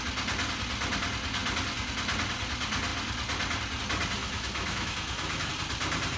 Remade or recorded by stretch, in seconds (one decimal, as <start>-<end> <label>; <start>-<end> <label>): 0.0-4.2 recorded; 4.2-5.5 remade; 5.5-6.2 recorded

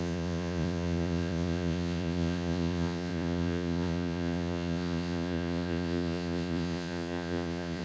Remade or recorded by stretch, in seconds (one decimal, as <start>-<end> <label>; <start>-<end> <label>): 0.0-7.8 remade

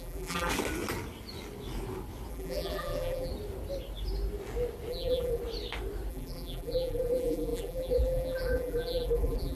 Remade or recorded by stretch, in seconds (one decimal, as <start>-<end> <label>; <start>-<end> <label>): 0.0-0.5 remade; 0.5-2.3 recorded; 2.3-3.3 remade; 3.3-4.9 recorded; 4.9-5.4 remade; 5.4-6.1 recorded; 6.1-9.6 remade

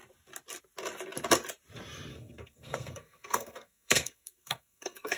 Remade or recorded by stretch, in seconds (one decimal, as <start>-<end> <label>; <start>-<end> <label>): 0.0-2.1 recorded; 2.1-5.2 remade

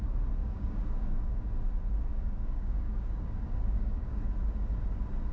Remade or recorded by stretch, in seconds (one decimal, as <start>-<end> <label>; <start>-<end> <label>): 0.0-0.4 recorded; 0.4-1.4 remade; 1.4-2.1 recorded; 2.1-4.2 remade; 4.2-5.3 recorded

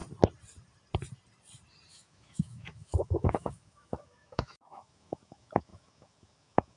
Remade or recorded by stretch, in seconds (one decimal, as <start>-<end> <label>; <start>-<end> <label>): 0.0-1.9 recorded; 1.9-6.8 remade